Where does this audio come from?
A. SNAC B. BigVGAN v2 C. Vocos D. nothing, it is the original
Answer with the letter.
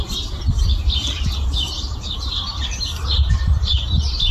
D